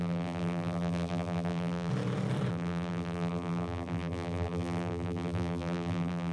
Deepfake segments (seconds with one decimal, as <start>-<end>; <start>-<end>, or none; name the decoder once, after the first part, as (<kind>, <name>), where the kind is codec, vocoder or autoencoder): 0.0-1.9 (vocoder, BigVGAN v2); 2.5-6.3